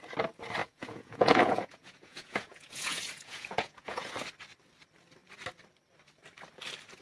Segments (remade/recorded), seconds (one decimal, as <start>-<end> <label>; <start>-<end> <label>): 0.0-0.6 recorded; 0.6-4.1 remade; 4.1-7.0 recorded